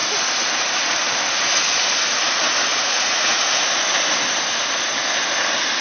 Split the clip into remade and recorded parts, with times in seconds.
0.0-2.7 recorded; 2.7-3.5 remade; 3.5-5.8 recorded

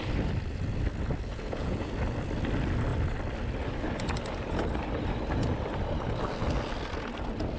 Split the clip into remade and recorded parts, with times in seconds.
0.0-1.3 recorded; 1.3-1.9 remade; 1.9-7.6 recorded

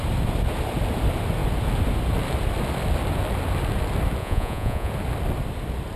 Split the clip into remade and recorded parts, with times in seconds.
0.0-4.2 recorded; 4.2-4.9 remade; 4.9-6.0 recorded

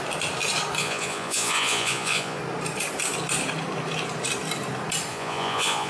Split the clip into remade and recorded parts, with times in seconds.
0.0-0.8 recorded; 0.8-2.4 remade; 2.4-5.1 recorded; 5.1-5.9 remade